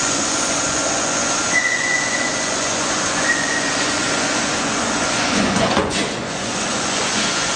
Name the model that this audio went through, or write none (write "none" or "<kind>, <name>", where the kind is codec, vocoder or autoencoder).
vocoder, Vocos